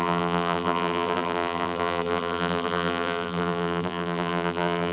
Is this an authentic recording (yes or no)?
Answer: no